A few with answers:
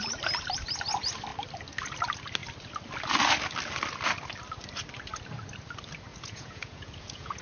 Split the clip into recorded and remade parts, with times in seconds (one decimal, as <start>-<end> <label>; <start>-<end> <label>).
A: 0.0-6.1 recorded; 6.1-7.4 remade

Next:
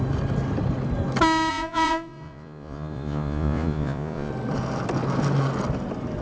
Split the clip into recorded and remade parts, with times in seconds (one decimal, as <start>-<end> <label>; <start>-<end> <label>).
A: 0.0-1.5 recorded; 1.5-4.3 remade; 4.3-6.2 recorded

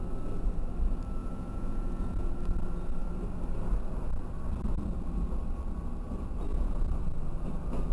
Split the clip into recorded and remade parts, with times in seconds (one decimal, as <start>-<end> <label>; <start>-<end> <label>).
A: 0.0-1.2 recorded; 1.2-2.3 remade; 2.3-6.5 recorded; 6.5-7.0 remade; 7.0-7.9 recorded